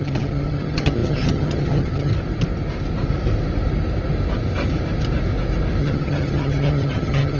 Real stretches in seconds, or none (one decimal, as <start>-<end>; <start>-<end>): 2.1-5.8